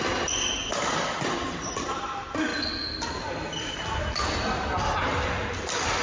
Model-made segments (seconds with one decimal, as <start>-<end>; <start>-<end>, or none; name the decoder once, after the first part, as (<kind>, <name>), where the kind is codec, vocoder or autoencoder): none